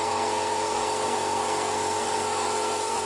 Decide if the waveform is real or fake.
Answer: fake